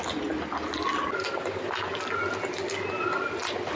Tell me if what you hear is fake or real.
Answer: real